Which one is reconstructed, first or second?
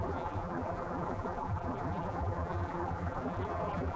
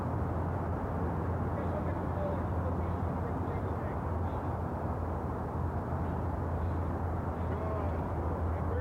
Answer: first